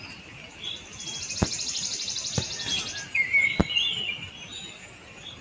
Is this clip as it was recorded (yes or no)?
yes